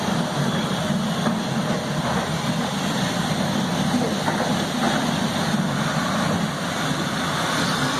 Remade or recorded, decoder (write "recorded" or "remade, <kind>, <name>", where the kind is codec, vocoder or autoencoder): recorded